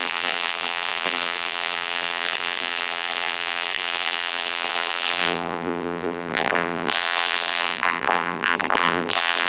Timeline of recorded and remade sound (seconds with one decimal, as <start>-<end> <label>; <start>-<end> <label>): 0.0-9.5 remade